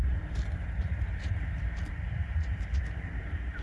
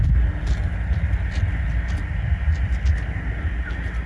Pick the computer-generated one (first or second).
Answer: first